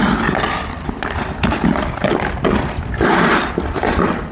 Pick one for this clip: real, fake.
real